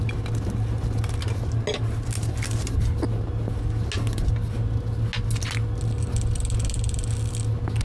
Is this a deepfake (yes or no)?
no